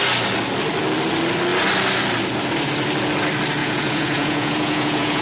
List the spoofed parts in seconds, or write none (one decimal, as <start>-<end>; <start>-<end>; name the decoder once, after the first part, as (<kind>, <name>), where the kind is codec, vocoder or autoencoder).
3.6-5.2 (vocoder, Vocos)